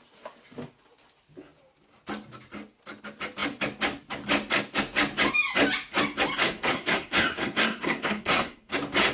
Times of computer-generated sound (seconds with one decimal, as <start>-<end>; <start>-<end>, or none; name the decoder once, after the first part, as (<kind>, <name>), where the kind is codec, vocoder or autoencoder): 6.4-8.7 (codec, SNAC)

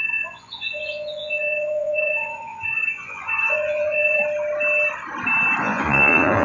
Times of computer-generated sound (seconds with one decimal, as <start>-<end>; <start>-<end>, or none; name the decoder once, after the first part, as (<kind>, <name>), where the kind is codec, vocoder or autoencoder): 0.0-4.2 (vocoder, Vocos); 5.6-6.4

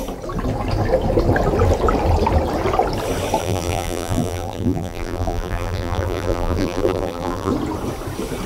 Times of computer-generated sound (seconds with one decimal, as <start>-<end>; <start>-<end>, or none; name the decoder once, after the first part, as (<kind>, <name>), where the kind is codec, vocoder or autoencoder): 3.4-7.5 (vocoder, BigVGAN v2)

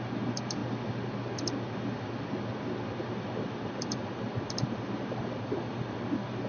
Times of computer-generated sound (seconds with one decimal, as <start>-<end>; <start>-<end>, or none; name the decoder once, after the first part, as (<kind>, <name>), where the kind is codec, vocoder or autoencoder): 0.0-0.6 (vocoder, BigVGAN v2); 3.7-6.5